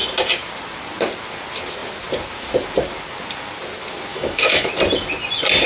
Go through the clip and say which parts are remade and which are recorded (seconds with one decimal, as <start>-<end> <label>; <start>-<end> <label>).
0.0-4.1 recorded; 4.1-4.7 remade; 4.7-5.7 recorded